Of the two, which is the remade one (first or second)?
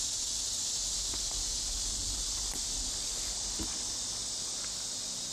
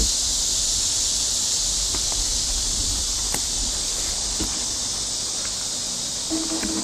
second